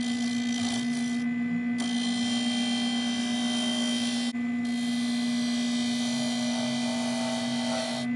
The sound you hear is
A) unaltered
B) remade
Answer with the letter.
A